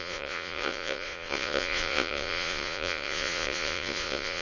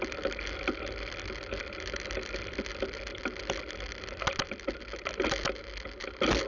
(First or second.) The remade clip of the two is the first